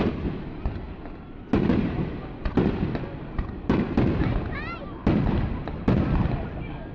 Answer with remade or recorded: recorded